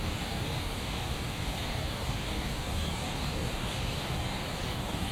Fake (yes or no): yes